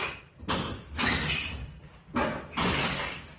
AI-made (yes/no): no